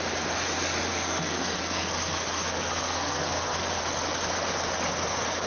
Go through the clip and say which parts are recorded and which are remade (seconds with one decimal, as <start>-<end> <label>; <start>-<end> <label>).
0.0-0.9 recorded; 0.9-3.8 remade; 3.8-5.5 recorded